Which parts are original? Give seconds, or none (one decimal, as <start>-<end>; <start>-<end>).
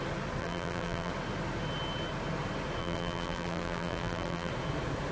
0.0-0.4; 1.1-2.8; 4.5-5.1